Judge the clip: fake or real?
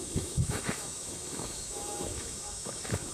fake